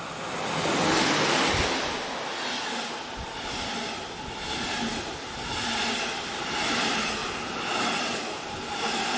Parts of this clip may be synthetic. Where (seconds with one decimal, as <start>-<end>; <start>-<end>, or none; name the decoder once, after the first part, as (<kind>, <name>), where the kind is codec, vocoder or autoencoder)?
none